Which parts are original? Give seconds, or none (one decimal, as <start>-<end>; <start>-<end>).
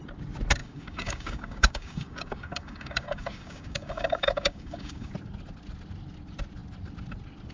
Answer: 0.0-0.6; 5.1-7.5